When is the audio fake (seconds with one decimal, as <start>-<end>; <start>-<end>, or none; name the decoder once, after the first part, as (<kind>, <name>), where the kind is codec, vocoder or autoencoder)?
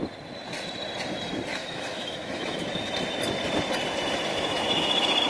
1.5-2.9 (autoencoder, DAC-VAE); 4.3-5.3